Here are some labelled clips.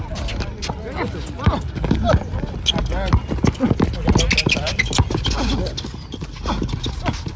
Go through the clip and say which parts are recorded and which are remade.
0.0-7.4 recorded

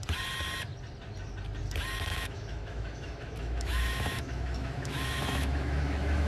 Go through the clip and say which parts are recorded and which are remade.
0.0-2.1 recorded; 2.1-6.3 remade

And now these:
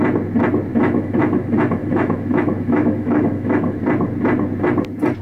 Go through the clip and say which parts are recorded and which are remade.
0.0-0.7 recorded; 0.7-3.8 remade; 3.8-5.2 recorded

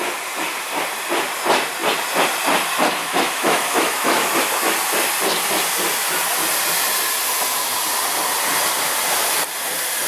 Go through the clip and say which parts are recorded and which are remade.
0.0-3.0 recorded; 3.0-4.3 remade; 4.3-10.1 recorded

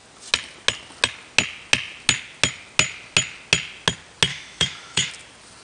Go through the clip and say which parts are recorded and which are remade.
0.0-4.3 recorded; 4.3-5.1 remade; 5.1-5.6 recorded

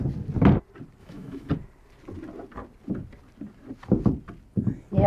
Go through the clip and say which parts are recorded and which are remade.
0.0-1.0 recorded; 1.0-1.5 remade; 1.5-5.1 recorded

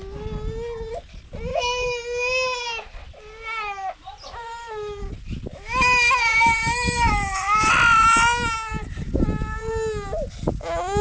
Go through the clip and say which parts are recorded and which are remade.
0.0-1.5 recorded; 1.5-2.0 remade; 2.0-5.5 recorded; 5.5-7.7 remade; 7.7-11.0 recorded

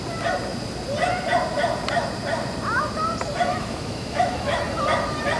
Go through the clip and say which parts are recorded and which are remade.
0.0-3.5 recorded; 3.5-4.6 remade; 4.6-5.4 recorded